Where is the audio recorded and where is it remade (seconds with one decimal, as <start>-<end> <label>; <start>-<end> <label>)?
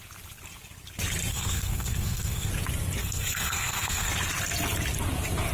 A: 0.0-1.3 recorded; 1.3-2.5 remade; 2.5-3.0 recorded; 3.0-4.1 remade; 4.1-5.5 recorded